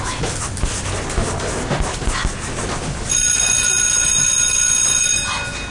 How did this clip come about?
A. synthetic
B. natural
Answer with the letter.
B